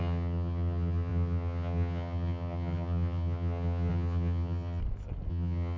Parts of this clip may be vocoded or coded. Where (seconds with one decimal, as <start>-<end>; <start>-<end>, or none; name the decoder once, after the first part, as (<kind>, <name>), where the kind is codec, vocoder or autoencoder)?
0.0-4.8 (vocoder, HiFi-GAN); 5.3-5.8